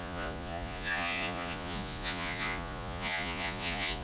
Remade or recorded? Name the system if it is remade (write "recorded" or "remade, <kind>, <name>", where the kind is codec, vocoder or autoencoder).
remade, vocoder, Vocos